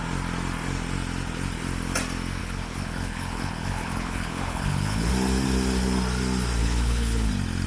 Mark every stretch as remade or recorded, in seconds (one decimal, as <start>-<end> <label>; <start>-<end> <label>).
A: 0.0-2.4 recorded; 2.4-5.1 remade; 5.1-6.6 recorded; 6.6-7.3 remade; 7.3-7.7 recorded